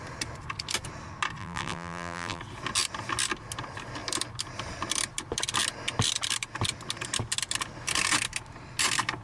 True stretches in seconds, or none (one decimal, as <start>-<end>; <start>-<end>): 0.0-1.4; 2.4-9.2